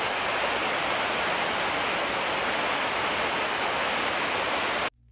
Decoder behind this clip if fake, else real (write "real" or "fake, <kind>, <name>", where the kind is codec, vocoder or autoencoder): real